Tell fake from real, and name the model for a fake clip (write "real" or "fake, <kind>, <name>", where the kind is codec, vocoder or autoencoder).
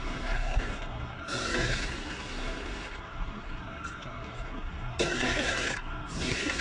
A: fake, codec, SNAC